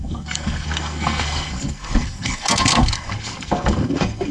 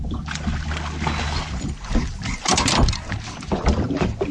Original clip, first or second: second